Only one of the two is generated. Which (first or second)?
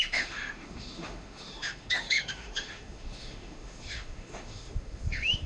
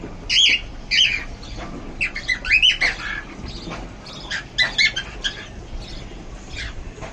first